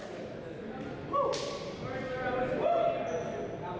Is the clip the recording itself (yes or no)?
yes